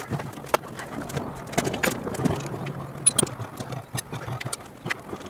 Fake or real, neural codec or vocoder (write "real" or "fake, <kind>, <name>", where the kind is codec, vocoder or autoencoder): real